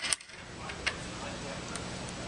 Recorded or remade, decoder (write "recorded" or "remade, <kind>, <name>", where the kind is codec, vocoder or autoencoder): recorded